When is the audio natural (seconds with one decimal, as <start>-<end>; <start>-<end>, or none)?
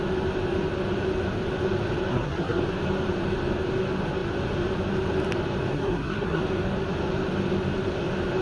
0.0-2.1; 2.6-5.7; 6.4-8.4